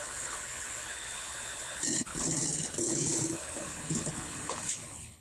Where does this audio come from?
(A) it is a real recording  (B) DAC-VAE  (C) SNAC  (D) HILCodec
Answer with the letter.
D